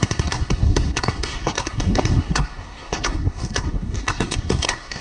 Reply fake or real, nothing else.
fake